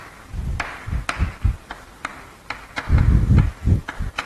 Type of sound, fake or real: real